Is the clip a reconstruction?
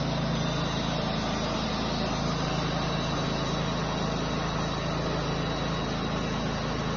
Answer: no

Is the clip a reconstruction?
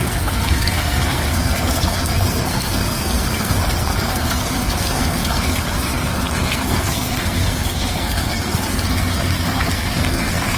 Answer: yes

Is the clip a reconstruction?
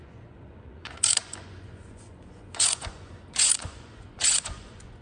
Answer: yes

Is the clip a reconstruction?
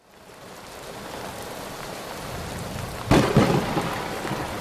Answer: no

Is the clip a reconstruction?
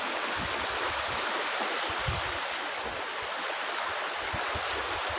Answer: no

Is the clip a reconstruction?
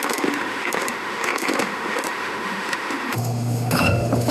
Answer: yes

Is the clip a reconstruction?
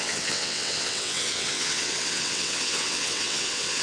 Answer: yes